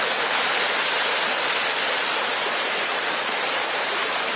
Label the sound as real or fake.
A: real